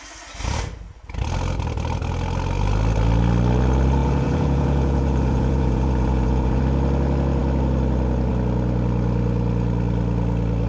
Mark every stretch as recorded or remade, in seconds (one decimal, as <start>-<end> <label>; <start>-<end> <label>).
0.0-4.0 recorded; 4.0-6.6 remade; 6.6-10.7 recorded